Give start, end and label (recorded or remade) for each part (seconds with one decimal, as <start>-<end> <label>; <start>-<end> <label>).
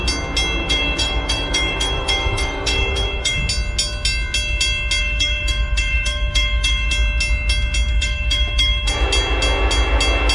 0.0-0.6 recorded; 0.6-3.4 remade; 3.4-5.0 recorded; 5.0-6.9 remade; 6.9-7.9 recorded; 7.9-8.9 remade; 8.9-10.3 recorded